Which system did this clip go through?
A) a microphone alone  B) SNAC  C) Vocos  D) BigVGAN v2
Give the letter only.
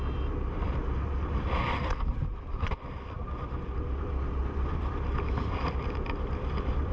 D